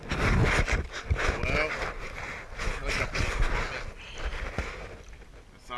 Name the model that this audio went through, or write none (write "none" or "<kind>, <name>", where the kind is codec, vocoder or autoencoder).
none